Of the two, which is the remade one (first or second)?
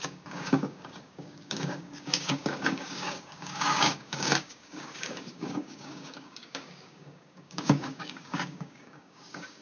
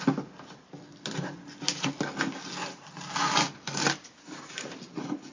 first